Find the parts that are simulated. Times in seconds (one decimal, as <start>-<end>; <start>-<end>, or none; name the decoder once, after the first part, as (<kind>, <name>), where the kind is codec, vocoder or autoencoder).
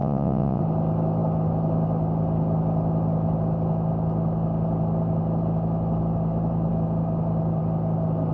0.0-0.6 (vocoder, Vocos)